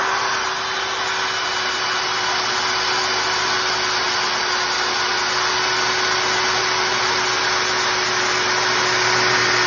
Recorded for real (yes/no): yes